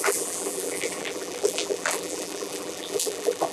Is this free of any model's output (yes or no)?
no